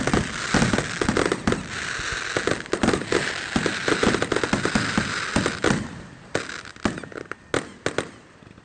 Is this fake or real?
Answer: real